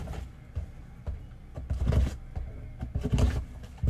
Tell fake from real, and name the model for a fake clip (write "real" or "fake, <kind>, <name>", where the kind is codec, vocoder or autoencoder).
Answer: real